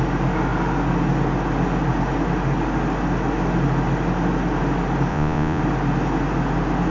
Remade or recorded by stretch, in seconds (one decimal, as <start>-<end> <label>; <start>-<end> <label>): 0.0-5.1 recorded; 5.1-5.6 remade; 5.6-6.9 recorded